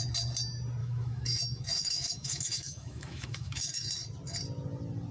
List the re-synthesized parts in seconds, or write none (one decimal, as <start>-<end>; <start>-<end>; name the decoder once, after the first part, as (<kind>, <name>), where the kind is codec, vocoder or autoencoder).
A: 0.8-3.9 (autoencoder, DAC-VAE)